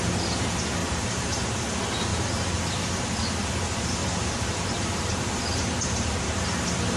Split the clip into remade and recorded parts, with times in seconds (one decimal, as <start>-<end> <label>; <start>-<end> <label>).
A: 0.0-0.8 recorded; 0.8-1.4 remade; 1.4-2.1 recorded; 2.1-3.2 remade; 3.2-4.0 recorded; 4.0-6.4 remade; 6.4-7.0 recorded